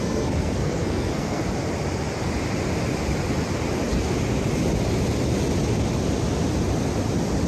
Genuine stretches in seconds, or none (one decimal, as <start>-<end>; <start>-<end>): 1.4-7.5